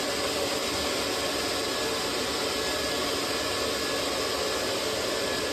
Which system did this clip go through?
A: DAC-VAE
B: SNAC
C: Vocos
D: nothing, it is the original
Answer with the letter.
D